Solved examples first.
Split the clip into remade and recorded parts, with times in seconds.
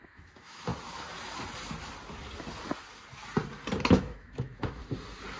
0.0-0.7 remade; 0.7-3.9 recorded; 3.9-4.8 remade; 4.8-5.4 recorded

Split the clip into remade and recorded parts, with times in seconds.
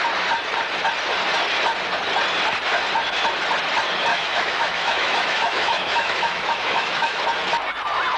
0.0-4.1 recorded; 4.1-7.2 remade; 7.2-8.2 recorded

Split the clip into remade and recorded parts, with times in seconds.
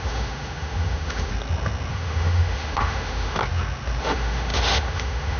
0.0-1.3 remade; 1.3-1.9 recorded; 1.9-3.4 remade; 3.4-4.0 recorded; 4.0-5.4 remade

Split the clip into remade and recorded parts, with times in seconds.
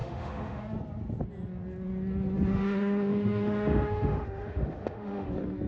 0.0-0.6 remade; 0.6-2.5 recorded; 2.5-5.3 remade; 5.3-5.7 recorded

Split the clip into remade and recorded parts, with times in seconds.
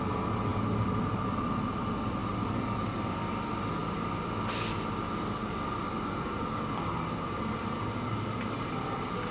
0.0-9.3 recorded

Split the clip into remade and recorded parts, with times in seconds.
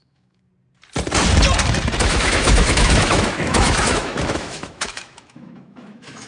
0.0-0.5 remade; 0.5-2.0 recorded; 2.0-6.3 remade